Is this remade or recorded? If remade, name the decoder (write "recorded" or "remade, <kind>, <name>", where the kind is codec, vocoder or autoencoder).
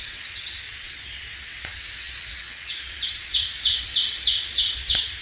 remade, vocoder, WaveNeXt